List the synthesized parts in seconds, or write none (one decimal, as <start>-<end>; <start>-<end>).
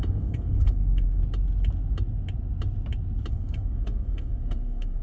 0.0-1.2; 3.3-5.0